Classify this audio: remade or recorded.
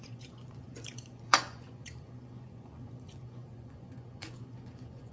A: remade